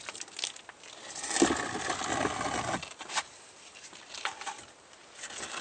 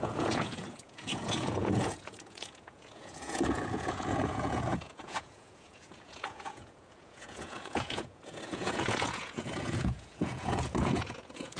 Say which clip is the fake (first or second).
second